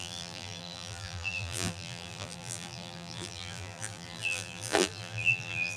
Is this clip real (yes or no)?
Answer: no